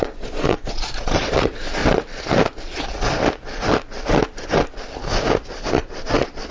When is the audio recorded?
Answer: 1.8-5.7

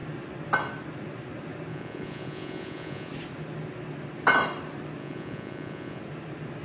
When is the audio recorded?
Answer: 0.0-1.7; 3.1-5.0; 6.0-6.6